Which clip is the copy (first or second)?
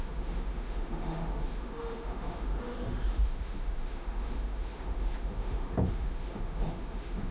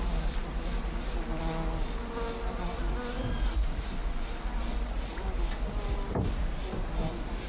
first